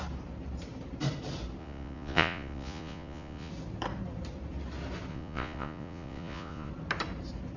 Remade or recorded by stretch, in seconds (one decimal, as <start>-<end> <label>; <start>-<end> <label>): 0.0-1.6 recorded; 1.6-3.5 remade; 3.5-5.1 recorded; 5.1-6.7 remade; 6.7-7.6 recorded